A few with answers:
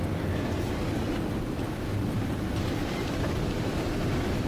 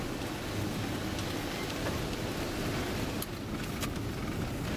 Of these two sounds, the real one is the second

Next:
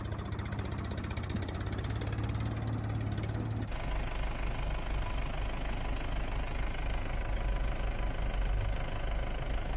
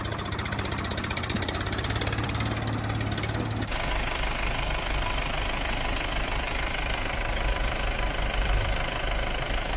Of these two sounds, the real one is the first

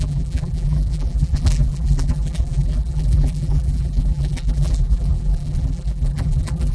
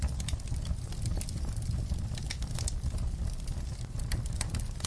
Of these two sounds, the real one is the second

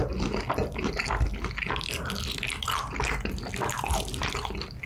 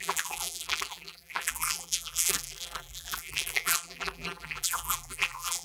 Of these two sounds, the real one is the first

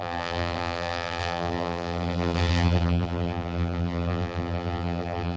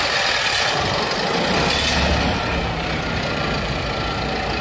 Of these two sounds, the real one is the second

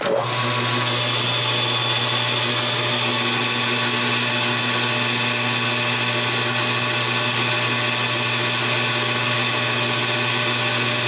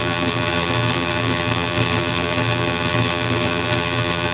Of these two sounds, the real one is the first